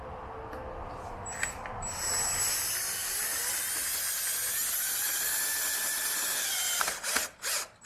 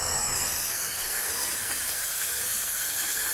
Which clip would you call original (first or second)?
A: first